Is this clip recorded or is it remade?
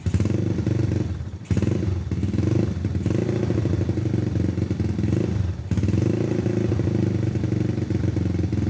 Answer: recorded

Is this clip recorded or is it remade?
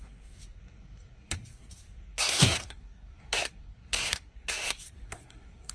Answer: remade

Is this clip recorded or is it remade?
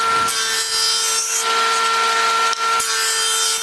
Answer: recorded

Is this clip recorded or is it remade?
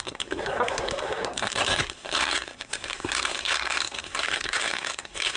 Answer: remade